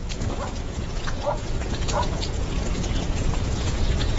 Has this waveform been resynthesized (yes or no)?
yes